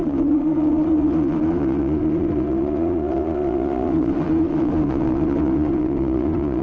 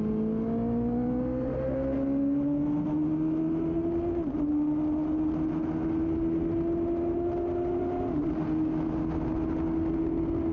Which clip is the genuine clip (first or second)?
second